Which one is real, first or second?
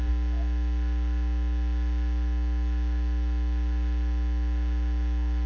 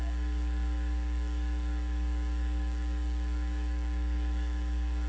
first